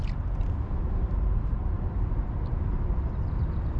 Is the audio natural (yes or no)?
yes